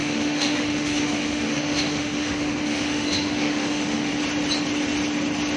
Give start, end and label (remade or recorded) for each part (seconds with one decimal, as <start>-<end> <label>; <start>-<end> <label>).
0.0-4.1 remade; 4.1-5.6 recorded